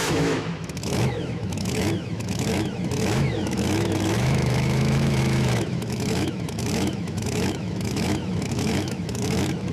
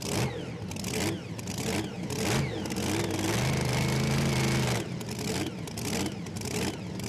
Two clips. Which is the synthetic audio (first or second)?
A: first